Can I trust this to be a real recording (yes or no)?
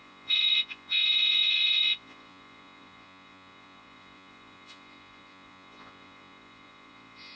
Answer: no